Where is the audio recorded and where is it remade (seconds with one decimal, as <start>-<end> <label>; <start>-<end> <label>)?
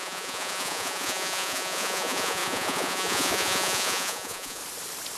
0.0-4.6 remade; 4.6-5.2 recorded